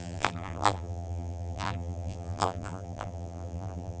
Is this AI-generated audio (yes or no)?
yes